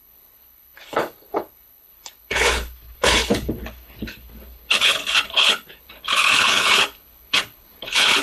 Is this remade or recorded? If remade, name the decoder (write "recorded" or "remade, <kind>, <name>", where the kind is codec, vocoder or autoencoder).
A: remade, codec, HILCodec